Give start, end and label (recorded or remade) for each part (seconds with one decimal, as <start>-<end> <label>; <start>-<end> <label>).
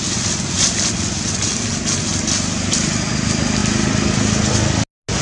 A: 0.0-5.2 recorded